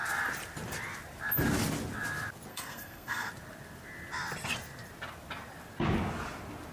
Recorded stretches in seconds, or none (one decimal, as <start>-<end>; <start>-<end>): 0.0-2.5; 3.3-6.7